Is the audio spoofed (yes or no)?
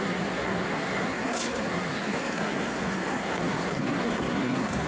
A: yes